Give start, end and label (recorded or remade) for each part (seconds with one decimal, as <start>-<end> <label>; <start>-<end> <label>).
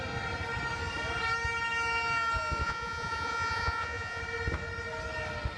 0.0-2.6 recorded; 2.6-4.2 remade; 4.2-5.6 recorded